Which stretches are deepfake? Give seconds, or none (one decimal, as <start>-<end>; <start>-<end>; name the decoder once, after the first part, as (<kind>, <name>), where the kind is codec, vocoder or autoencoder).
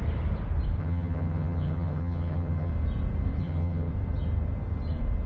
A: 0.8-2.7 (vocoder, HiFi-GAN); 3.4-3.9